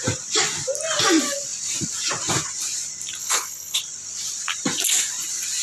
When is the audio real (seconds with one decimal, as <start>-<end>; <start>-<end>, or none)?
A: 0.0-3.2; 3.8-5.6

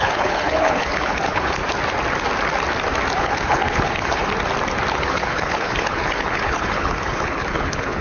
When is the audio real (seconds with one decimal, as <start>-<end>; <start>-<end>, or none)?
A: 1.6-3.2; 4.2-4.9

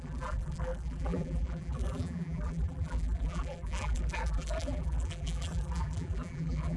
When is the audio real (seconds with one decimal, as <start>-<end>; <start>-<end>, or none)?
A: none

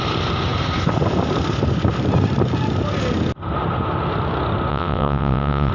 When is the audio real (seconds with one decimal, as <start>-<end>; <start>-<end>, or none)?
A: 0.0-4.7